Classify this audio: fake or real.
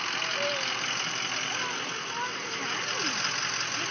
fake